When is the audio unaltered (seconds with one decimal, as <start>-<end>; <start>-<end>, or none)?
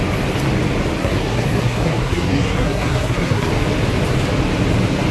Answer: 0.0-1.0; 3.5-5.1